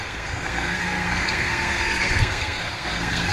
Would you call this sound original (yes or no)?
no